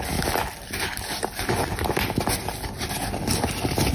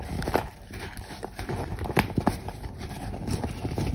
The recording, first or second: first